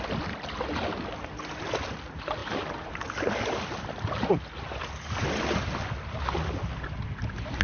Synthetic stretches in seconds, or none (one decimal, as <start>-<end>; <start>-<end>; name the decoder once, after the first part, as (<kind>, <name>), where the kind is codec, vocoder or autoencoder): none